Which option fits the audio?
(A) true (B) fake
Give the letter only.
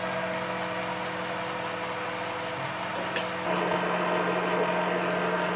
A